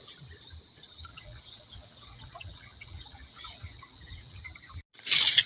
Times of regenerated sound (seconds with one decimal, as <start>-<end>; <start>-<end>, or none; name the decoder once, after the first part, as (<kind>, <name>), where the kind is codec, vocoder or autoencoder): 1.1-4.4 (vocoder, WaveNeXt)